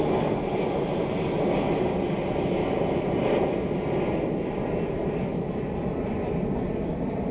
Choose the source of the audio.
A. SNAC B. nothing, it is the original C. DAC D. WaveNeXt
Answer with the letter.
B